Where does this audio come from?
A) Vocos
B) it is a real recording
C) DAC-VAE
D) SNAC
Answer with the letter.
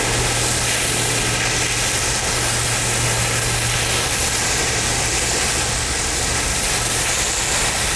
B